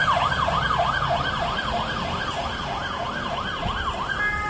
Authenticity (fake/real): real